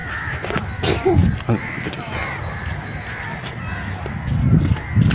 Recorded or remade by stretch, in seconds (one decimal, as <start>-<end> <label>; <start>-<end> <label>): 0.0-5.1 recorded